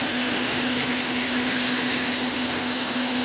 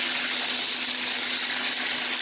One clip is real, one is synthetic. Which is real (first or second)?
second